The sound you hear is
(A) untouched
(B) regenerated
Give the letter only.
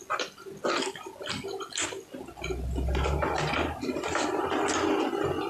A